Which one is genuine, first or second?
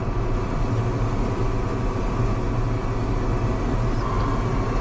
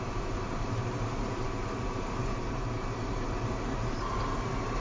first